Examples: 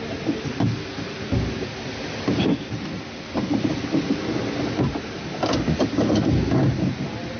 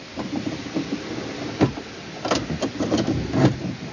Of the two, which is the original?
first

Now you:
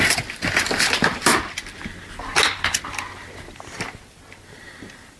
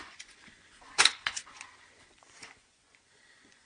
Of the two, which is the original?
first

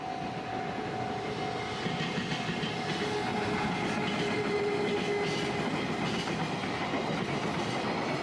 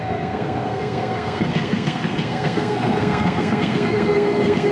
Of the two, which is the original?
first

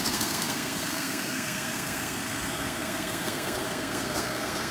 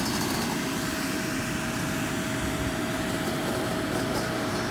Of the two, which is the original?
second